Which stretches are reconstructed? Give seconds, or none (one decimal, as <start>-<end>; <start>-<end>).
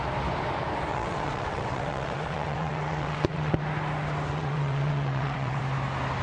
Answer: 0.9-3.6; 4.3-5.6